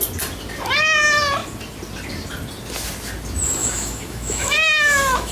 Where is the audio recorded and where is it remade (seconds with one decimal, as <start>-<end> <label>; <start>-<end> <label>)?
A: 0.0-3.6 recorded; 3.6-5.3 remade